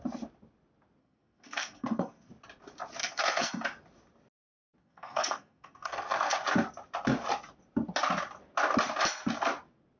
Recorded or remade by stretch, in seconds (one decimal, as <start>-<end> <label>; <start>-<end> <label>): 0.0-1.0 recorded; 1.0-2.3 remade; 2.3-3.0 recorded; 3.0-3.5 remade; 3.5-4.8 recorded; 4.8-6.4 remade; 6.4-10.0 recorded